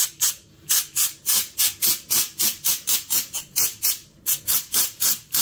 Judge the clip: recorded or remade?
remade